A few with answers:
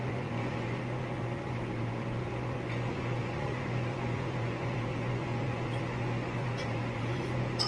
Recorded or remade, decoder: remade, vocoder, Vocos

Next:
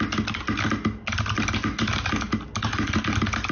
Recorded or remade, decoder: recorded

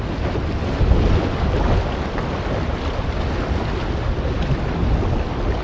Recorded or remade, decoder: recorded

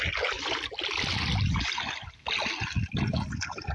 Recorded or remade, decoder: recorded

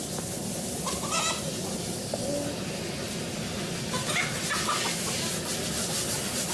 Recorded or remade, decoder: recorded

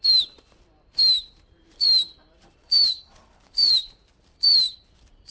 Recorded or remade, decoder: remade, vocoder, BigVGAN v2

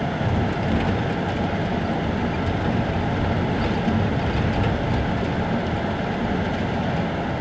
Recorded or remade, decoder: recorded